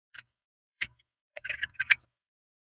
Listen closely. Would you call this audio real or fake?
fake